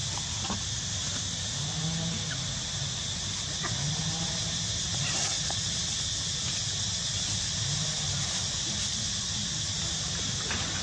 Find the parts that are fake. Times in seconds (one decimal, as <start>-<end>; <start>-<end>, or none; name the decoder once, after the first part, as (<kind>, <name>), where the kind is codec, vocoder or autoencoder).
none